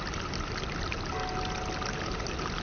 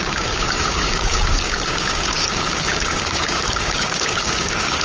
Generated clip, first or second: second